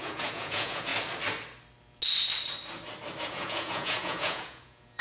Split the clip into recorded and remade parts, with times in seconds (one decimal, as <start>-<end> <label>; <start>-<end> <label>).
0.0-0.9 remade; 0.9-3.2 recorded; 3.2-5.0 remade